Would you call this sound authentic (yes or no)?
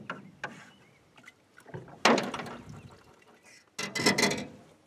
yes